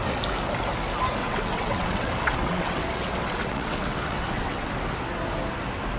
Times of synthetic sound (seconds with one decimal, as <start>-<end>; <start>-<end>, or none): 1.2-4.7